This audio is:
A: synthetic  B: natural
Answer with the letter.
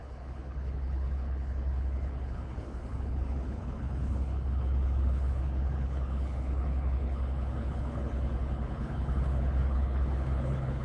A